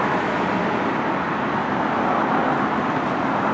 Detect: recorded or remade recorded